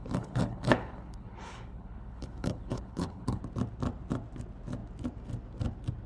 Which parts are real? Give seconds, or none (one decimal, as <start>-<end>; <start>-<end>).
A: 3.4-6.1